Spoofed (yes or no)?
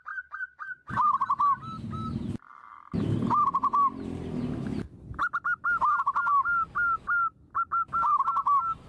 no